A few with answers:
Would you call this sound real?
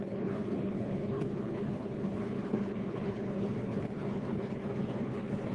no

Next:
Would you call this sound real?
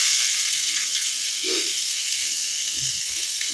no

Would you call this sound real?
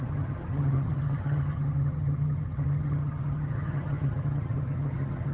no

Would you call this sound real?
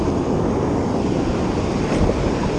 yes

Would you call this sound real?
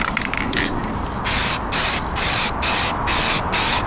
yes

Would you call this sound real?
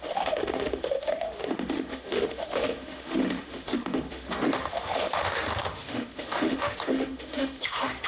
no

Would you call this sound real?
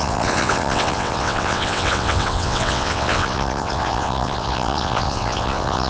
no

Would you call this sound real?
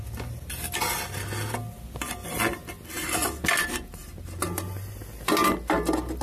yes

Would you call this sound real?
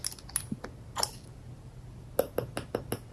yes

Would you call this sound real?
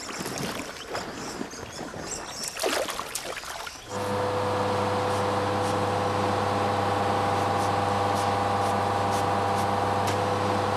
yes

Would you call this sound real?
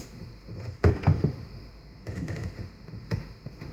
no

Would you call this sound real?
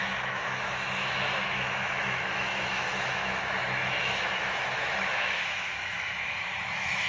no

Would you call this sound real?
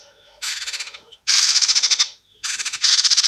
no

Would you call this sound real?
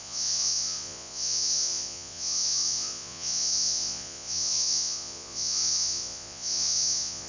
no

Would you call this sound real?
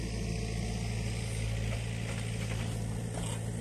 yes